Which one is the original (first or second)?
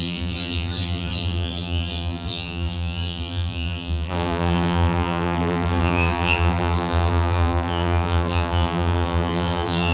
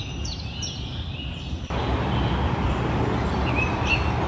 second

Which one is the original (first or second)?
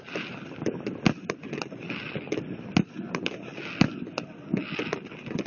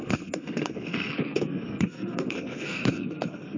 first